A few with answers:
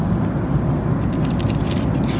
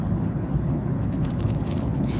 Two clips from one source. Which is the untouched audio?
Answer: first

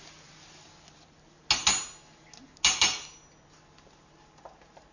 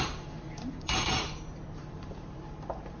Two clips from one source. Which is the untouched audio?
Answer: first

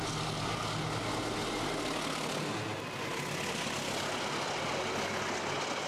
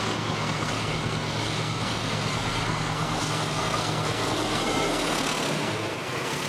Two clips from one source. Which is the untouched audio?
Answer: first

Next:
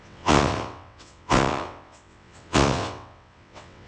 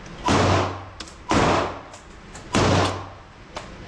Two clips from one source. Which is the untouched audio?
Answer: second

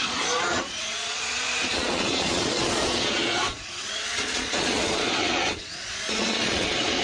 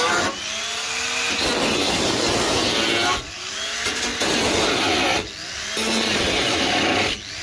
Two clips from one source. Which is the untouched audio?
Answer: second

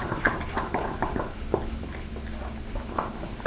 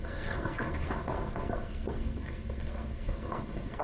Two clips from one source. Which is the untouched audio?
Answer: first